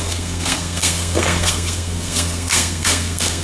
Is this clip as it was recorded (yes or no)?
no